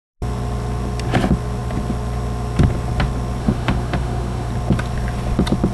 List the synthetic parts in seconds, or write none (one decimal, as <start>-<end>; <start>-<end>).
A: 3.4-4.5